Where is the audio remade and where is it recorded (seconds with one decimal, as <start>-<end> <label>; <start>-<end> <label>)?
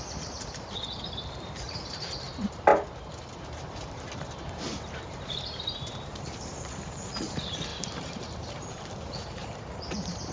0.0-10.3 remade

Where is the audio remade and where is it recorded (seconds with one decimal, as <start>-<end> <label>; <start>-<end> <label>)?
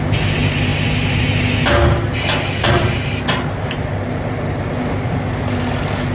0.0-6.1 recorded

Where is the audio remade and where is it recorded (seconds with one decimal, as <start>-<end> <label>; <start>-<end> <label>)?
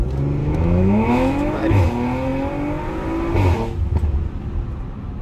0.0-0.4 recorded; 0.4-1.8 remade; 1.8-5.2 recorded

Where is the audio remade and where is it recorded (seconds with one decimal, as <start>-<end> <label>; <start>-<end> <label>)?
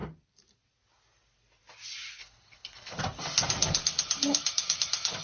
0.0-2.2 recorded; 2.2-3.0 remade; 3.0-5.2 recorded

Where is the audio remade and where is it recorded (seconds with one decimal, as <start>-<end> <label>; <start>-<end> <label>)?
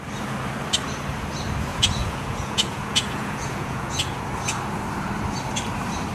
0.0-1.7 recorded; 1.7-4.2 remade; 4.2-6.1 recorded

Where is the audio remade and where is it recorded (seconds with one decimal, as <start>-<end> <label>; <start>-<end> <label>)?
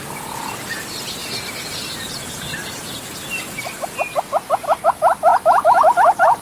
0.0-1.2 recorded; 1.2-3.4 remade; 3.4-5.3 recorded; 5.3-6.4 remade